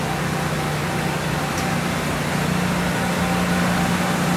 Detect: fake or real real